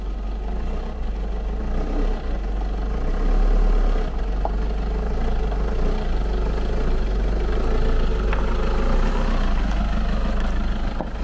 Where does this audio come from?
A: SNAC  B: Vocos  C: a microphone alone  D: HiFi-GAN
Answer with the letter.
C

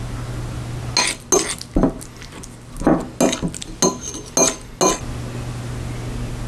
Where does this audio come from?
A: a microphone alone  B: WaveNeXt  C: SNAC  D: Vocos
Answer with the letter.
A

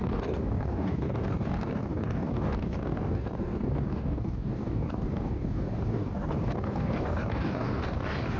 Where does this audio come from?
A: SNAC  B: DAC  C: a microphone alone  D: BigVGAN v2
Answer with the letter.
B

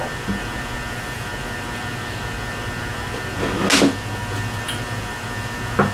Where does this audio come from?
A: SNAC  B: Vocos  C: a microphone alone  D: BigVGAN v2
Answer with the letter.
C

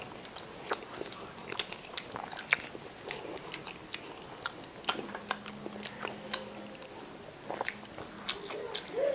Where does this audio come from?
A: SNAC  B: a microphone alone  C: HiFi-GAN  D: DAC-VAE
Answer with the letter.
B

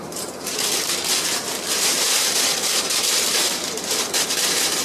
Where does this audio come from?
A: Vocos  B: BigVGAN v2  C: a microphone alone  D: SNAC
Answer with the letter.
B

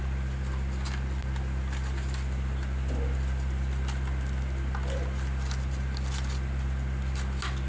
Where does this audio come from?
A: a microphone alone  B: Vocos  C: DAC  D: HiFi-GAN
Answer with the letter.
A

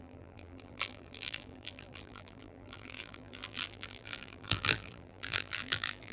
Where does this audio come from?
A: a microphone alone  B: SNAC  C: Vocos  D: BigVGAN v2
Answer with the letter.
D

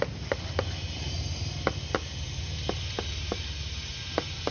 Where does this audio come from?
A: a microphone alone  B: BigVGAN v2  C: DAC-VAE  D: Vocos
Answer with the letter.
A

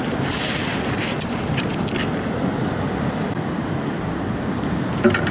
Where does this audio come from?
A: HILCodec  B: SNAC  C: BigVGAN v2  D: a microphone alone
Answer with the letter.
D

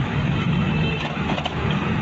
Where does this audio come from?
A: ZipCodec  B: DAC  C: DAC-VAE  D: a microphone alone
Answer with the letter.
C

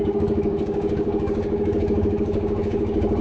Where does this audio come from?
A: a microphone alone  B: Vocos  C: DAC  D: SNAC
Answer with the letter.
C